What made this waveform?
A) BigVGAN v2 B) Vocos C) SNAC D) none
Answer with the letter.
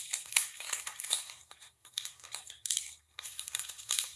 C